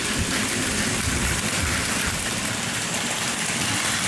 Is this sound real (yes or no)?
no